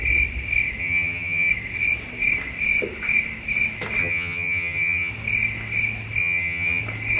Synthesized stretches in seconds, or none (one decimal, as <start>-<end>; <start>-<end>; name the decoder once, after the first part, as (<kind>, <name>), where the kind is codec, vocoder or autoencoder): 0.8-1.5 (vocoder, HiFi-GAN); 4.0-5.1; 6.2-6.8